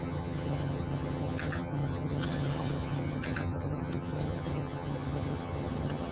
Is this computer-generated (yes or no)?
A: yes